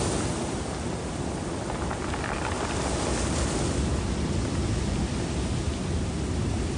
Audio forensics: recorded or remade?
recorded